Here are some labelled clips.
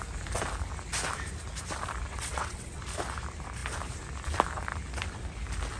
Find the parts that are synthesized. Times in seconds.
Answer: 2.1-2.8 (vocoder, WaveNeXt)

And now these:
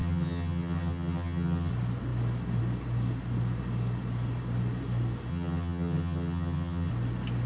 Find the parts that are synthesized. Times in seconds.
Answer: 0.0-1.7 (vocoder, HiFi-GAN); 5.3-6.9